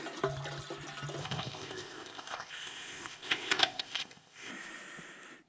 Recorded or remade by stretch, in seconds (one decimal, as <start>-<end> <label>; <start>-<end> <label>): 0.0-1.2 recorded; 1.2-4.5 remade; 4.5-5.5 recorded